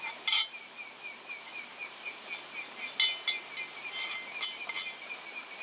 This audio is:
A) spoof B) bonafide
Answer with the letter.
B